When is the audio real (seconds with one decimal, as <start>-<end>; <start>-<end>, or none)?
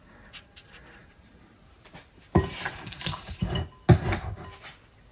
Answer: 0.0-1.0; 3.4-5.1